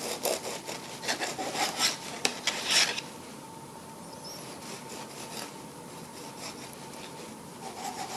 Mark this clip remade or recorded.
recorded